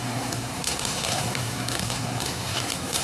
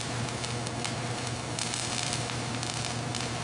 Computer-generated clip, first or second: first